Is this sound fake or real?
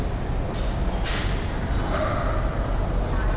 real